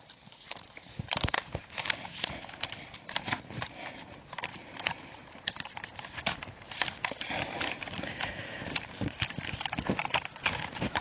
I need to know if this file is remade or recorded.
remade